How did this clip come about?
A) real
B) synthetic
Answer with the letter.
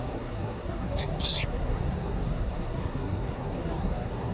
B